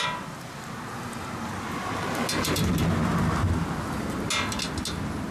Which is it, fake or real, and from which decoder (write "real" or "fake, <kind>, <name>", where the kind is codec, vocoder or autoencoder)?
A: real